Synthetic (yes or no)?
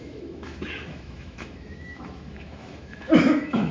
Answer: yes